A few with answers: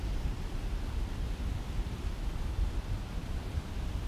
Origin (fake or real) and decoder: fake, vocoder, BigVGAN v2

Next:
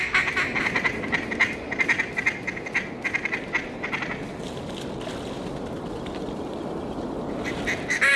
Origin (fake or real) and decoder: real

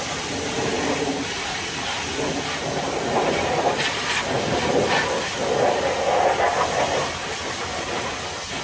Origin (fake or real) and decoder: real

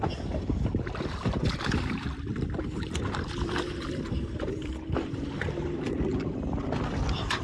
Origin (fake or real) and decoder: fake, vocoder, BigVGAN v2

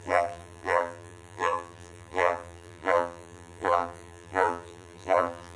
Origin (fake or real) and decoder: fake, vocoder, BigVGAN v2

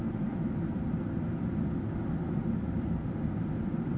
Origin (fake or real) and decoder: fake, vocoder, BigVGAN v2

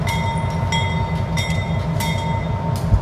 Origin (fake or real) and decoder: real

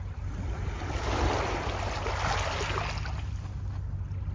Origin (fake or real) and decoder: real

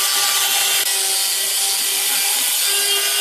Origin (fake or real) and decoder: real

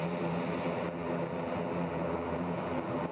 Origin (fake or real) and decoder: fake, vocoder, BigVGAN v2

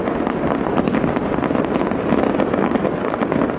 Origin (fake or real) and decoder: real